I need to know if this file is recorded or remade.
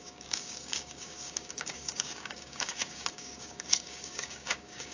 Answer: remade